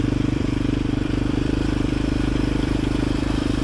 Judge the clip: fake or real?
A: fake